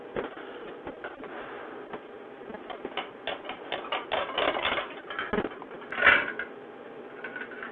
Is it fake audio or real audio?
real